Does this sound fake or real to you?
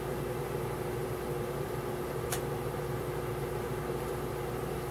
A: real